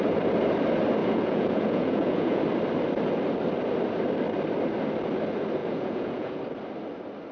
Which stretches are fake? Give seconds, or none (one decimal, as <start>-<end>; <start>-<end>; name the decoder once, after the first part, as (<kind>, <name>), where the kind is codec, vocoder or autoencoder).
1.0-2.4 (vocoder, Vocos); 5.6-6.4